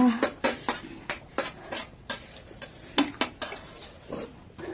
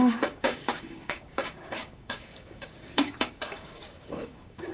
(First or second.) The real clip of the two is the first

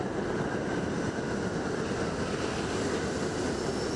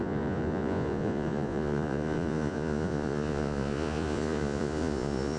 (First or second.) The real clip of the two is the first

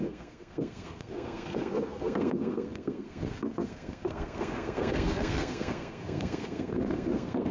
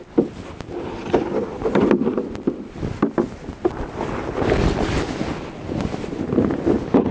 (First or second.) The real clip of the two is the second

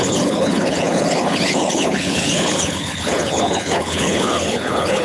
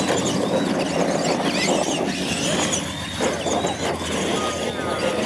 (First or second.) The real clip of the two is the second